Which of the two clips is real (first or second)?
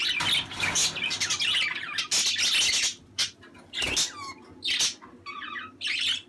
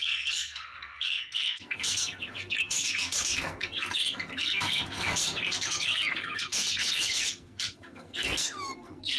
first